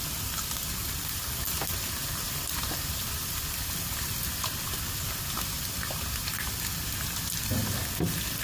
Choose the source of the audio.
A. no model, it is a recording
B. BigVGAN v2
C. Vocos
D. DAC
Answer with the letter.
A